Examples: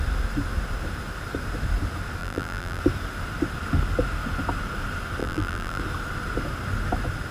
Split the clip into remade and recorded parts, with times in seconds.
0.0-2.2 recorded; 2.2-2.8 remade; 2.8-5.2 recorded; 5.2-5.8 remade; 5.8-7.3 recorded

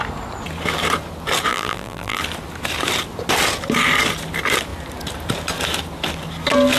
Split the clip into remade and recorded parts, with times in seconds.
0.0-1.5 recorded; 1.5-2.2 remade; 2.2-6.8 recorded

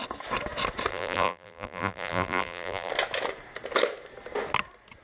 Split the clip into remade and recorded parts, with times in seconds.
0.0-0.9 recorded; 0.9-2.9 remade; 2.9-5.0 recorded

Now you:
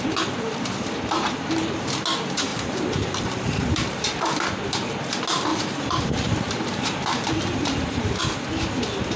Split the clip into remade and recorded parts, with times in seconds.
0.0-2.5 recorded; 2.5-4.2 remade; 4.2-5.5 recorded; 5.5-8.2 remade; 8.2-9.2 recorded

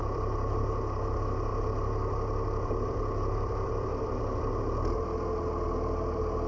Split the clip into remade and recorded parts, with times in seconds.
0.0-0.6 remade; 0.6-1.5 recorded; 1.5-4.6 remade; 4.6-6.5 recorded

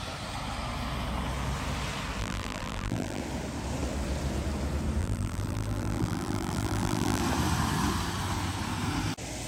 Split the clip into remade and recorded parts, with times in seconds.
0.0-2.2 recorded; 2.2-3.2 remade; 3.2-5.0 recorded; 5.0-7.2 remade; 7.2-9.5 recorded